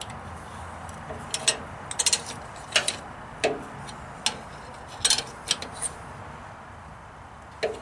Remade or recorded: recorded